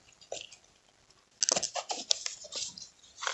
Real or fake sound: real